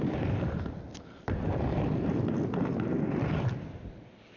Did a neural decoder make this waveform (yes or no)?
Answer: no